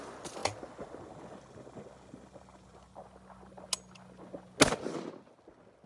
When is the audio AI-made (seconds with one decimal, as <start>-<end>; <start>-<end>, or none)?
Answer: none